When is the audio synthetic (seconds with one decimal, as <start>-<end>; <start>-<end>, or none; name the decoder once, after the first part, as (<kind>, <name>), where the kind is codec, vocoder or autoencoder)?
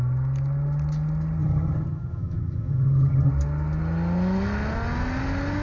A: 1.4-3.3 (vocoder, HiFi-GAN)